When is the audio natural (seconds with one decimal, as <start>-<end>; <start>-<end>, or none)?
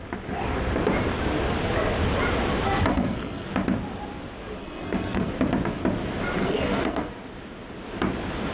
0.0-2.9; 3.5-4.6; 5.3-6.4; 7.1-8.5